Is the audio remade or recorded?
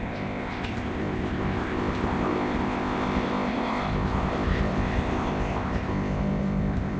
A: remade